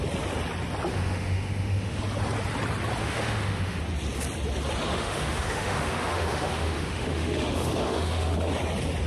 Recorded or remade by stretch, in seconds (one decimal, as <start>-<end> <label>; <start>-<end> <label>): 0.0-0.9 recorded; 0.9-2.0 remade; 2.0-3.0 recorded; 3.0-3.8 remade; 3.8-4.9 recorded; 4.9-8.5 remade; 8.5-9.1 recorded